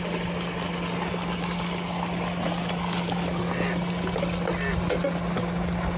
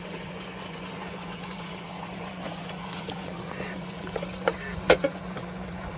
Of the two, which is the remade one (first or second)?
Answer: second